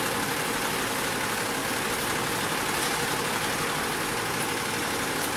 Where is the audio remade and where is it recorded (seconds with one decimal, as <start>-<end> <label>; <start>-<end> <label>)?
0.0-5.4 recorded